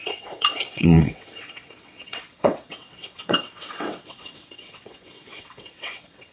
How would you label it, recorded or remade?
remade